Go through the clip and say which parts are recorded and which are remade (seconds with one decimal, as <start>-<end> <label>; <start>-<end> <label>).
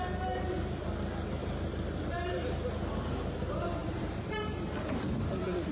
0.0-3.8 recorded; 3.8-5.1 remade; 5.1-5.7 recorded